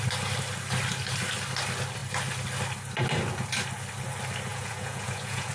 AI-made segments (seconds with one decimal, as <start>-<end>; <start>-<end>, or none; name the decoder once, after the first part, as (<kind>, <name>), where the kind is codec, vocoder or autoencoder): 4.5-5.5 (vocoder, Vocos)